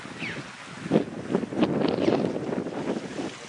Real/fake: real